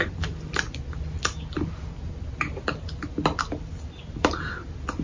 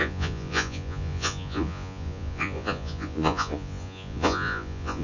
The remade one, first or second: second